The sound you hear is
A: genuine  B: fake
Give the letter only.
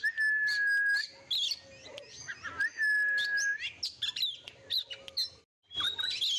A